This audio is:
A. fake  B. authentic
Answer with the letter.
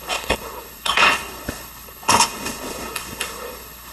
A